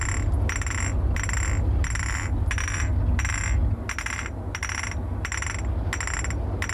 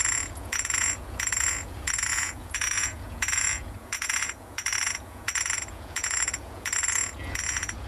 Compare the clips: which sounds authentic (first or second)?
first